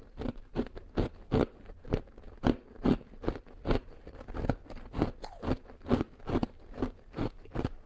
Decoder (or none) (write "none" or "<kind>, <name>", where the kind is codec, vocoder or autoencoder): none